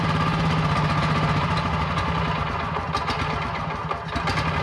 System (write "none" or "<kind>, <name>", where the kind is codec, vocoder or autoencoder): none